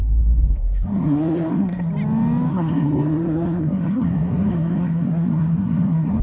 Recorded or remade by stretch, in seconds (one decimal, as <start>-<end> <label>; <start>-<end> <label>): 0.0-1.9 remade; 1.9-2.5 recorded; 2.5-6.2 remade